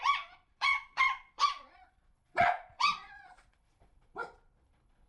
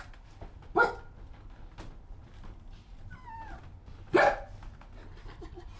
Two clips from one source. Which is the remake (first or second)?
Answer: first